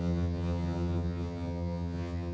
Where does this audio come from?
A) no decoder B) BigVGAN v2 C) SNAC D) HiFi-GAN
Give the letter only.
D